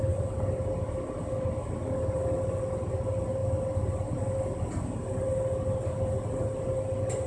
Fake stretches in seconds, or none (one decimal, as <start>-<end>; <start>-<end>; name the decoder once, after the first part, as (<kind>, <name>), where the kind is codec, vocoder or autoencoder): 3.4-6.3 (vocoder, BigVGAN v2)